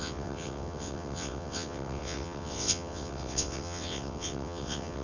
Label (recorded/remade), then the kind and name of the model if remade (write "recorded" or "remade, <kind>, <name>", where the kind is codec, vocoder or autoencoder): remade, vocoder, WaveNeXt